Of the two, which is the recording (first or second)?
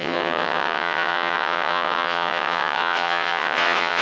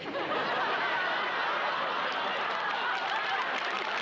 second